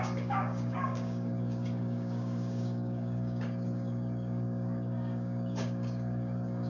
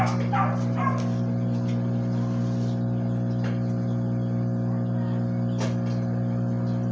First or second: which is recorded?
second